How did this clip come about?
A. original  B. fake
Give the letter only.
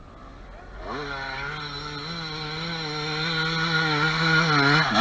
A